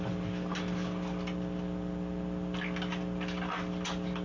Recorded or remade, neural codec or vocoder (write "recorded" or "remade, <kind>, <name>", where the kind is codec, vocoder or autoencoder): recorded